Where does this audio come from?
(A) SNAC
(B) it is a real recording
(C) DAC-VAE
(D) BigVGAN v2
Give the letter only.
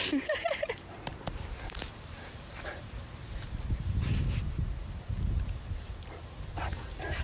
D